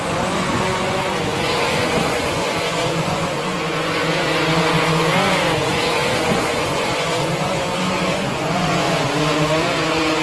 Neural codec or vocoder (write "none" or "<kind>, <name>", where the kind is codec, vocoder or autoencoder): vocoder, Vocos